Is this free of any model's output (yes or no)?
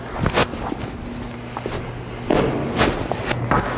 yes